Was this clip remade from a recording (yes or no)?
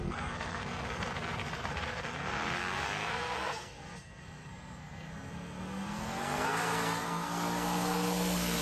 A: yes